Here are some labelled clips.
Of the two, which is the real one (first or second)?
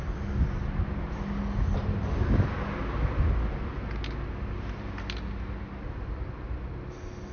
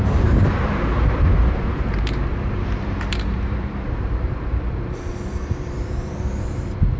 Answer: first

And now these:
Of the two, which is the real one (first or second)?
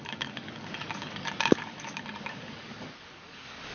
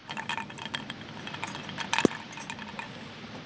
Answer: second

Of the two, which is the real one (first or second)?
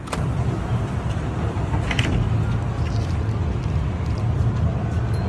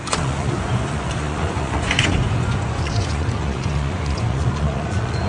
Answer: first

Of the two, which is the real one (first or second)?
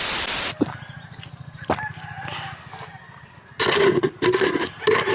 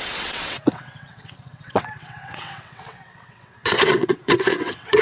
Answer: first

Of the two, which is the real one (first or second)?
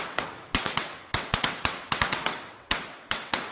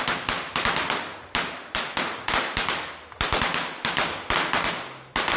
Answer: second